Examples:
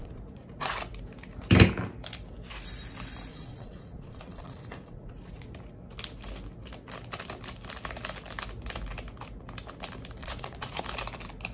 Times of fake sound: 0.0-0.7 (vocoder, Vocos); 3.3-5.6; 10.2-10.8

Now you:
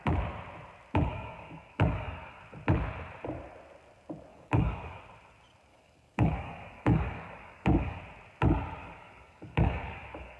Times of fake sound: 1.1-2.4 (codec, DAC); 4.3-5.0; 5.7-8.0; 8.8-10.4

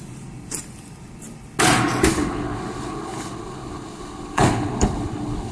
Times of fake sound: 2.1-5.5 (codec, HILCodec)

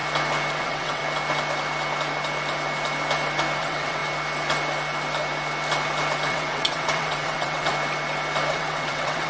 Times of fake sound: 0.5-1.0 (vocoder, WaveNeXt); 3.6-4.0; 6.3-7.7; 8.5-9.3

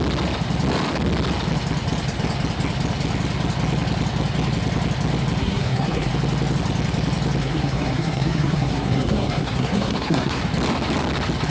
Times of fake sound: 5.4-6.1 (codec, SNAC); 7.4-10.4

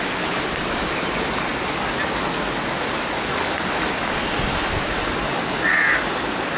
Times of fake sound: none